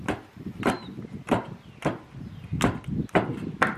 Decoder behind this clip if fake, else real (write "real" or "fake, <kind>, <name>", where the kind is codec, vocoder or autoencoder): real